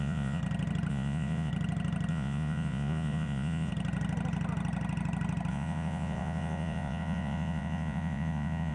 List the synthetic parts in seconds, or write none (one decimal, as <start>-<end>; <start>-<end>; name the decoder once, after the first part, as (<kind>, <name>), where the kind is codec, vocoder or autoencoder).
0.0-0.4 (vocoder, Vocos); 0.9-1.5; 2.1-3.7; 5.5-8.7